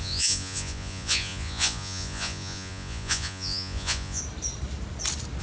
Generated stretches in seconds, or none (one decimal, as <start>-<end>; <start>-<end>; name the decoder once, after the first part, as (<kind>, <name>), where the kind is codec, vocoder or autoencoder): 0.0-4.2 (vocoder, Vocos)